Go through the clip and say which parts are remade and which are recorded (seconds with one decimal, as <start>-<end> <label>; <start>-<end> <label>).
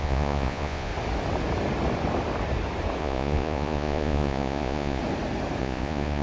0.0-0.9 remade; 0.9-3.0 recorded; 3.0-5.0 remade; 5.0-5.6 recorded; 5.6-6.2 remade